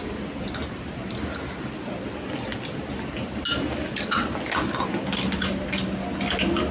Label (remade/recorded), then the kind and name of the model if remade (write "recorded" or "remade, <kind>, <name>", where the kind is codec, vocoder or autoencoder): recorded